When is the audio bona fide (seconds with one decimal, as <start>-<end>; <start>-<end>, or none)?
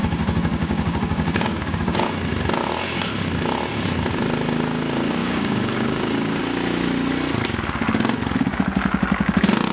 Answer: 2.1-5.2; 6.4-9.7